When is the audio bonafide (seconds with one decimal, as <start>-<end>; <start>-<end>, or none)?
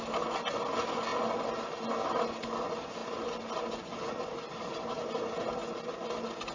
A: 0.0-6.5